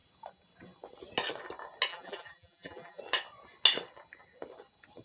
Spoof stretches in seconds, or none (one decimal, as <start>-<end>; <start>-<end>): 1.9-3.0